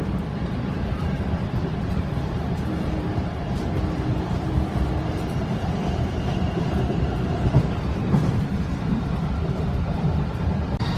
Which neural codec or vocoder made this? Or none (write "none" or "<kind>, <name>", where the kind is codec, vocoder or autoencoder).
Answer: vocoder, BigVGAN v2